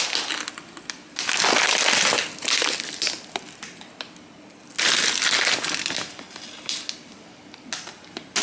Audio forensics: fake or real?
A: real